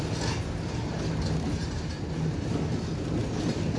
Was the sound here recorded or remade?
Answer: recorded